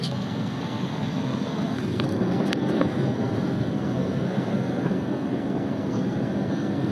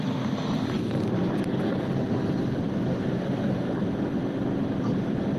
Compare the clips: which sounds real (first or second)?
second